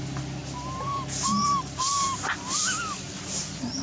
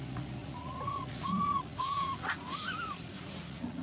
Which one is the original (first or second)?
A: first